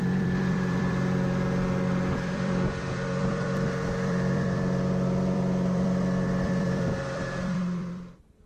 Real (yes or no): no